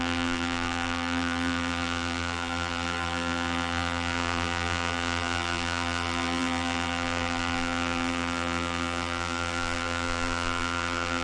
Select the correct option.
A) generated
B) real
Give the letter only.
A